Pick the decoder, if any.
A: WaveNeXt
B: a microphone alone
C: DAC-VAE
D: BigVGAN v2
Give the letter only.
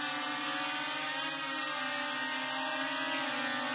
B